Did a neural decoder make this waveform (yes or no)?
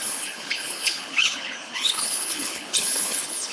yes